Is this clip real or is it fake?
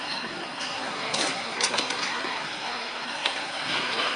fake